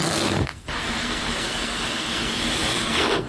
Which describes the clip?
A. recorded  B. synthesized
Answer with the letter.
B